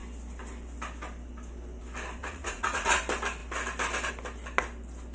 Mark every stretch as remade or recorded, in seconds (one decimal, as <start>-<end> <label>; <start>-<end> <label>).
0.0-2.2 recorded; 2.2-3.0 remade; 3.0-5.1 recorded